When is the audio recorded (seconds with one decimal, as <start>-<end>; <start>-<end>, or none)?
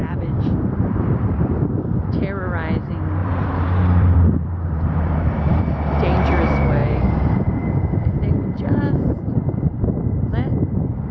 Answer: 1.6-3.2; 5.6-6.8; 9.8-11.1